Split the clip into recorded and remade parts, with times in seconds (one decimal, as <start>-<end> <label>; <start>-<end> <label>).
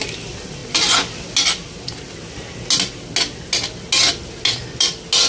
0.0-5.3 recorded